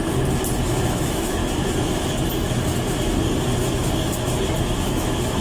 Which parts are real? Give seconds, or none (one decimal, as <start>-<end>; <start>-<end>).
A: 0.0-0.7; 1.4-4.6